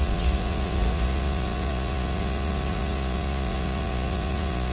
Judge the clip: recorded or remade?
remade